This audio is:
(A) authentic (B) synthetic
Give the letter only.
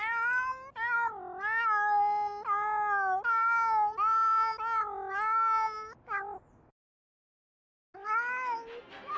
A